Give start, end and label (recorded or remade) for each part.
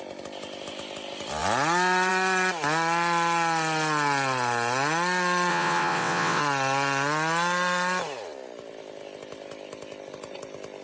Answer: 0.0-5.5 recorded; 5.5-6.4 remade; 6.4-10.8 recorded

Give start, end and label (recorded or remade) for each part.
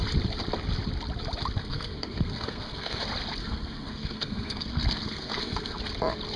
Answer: 0.0-1.6 recorded; 1.6-3.0 remade; 3.0-3.4 recorded; 3.4-5.8 remade; 5.8-6.4 recorded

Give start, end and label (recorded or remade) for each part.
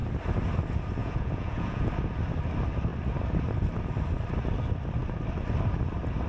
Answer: 0.0-1.0 recorded; 1.0-1.9 remade; 1.9-6.3 recorded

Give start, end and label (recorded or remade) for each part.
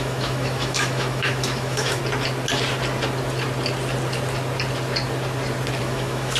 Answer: 0.0-2.0 remade; 2.0-5.8 recorded; 5.8-6.4 remade